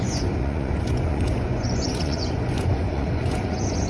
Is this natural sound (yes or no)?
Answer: no